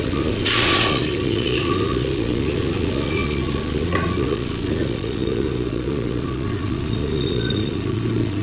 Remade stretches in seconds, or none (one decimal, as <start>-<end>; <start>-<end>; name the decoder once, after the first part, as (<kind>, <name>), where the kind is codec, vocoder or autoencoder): 0.0-8.4 (vocoder, Vocos)